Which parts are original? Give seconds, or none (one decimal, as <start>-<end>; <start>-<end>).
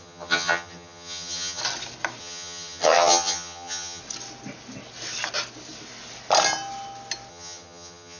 1.6-2.2; 4.0-7.3